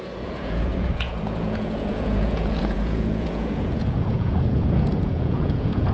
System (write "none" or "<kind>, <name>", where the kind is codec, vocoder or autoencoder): vocoder, Vocos